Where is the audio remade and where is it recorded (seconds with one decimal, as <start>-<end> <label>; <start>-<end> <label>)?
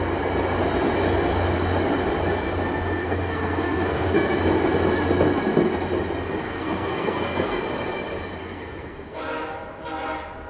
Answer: 0.0-3.0 recorded; 3.0-4.4 remade; 4.4-6.4 recorded; 6.4-7.6 remade; 7.6-8.4 recorded; 8.4-9.2 remade; 9.2-10.5 recorded